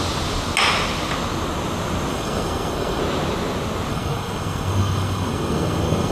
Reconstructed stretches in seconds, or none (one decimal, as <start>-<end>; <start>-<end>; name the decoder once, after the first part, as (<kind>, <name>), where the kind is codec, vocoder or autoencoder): 2.1-3.0 (codec, SNAC); 3.9-6.1